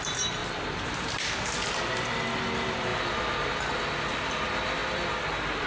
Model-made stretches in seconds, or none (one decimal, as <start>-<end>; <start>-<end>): 0.4-1.9; 2.9-3.5